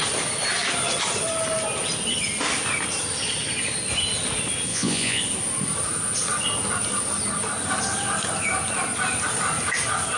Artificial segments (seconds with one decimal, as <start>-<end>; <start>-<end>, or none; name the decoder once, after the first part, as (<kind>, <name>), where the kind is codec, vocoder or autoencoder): 4.7-5.2 (vocoder, Vocos)